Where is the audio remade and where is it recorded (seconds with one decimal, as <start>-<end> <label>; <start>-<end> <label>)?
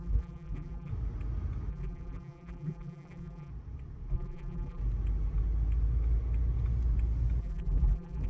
0.0-0.9 remade; 0.9-1.7 recorded; 1.7-3.5 remade; 3.5-4.1 recorded; 4.1-4.8 remade; 4.8-7.4 recorded; 7.4-8.3 remade